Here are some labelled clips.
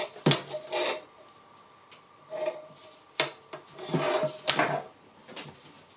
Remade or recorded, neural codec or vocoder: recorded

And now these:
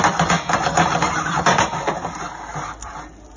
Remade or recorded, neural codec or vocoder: recorded